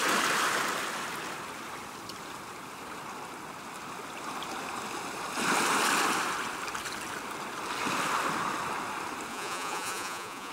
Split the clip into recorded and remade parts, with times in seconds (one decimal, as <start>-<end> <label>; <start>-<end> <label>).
0.0-9.3 recorded; 9.3-10.5 remade